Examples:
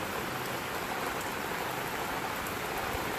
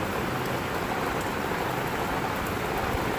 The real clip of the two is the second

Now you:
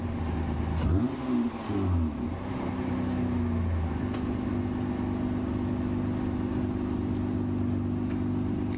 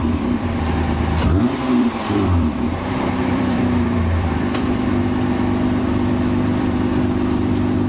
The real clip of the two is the first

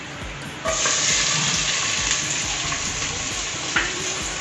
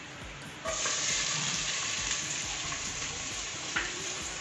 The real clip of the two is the first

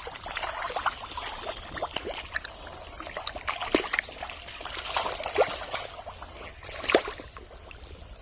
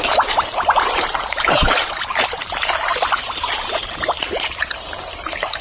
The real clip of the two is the first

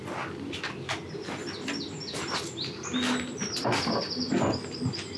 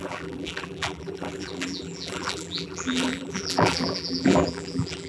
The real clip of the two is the first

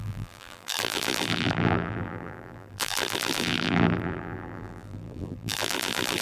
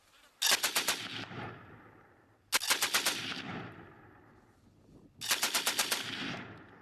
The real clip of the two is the second